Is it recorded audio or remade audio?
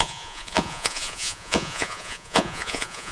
remade